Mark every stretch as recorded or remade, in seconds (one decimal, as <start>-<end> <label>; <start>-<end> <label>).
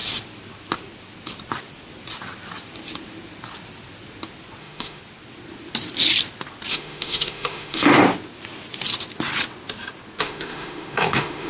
0.0-4.6 recorded; 4.6-5.0 remade; 5.0-6.7 recorded; 6.7-7.9 remade; 7.9-10.2 recorded; 10.2-11.5 remade